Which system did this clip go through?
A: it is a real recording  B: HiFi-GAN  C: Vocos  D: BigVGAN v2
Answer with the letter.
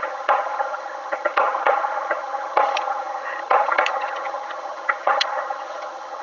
B